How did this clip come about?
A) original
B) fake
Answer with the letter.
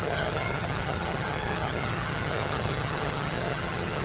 B